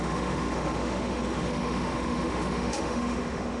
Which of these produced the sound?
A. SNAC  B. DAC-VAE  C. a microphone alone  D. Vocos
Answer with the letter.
B